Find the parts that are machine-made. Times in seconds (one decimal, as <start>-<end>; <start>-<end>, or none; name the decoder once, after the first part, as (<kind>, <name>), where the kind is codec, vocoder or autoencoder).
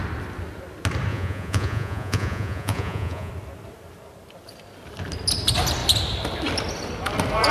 1.1-3.3 (vocoder, Vocos)